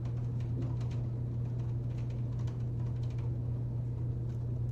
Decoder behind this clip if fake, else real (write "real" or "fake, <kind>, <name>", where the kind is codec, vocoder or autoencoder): real